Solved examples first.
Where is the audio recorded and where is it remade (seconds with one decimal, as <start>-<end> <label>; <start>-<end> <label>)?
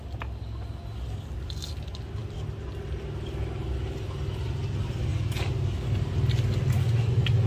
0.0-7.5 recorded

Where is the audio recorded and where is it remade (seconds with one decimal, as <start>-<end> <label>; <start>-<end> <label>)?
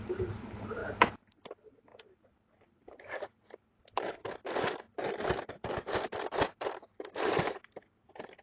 0.0-0.8 recorded; 0.8-1.5 remade; 1.5-6.9 recorded; 6.9-7.8 remade; 7.8-8.4 recorded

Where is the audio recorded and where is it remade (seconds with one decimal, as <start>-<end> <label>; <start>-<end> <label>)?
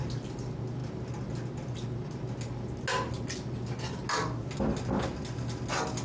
0.0-6.0 recorded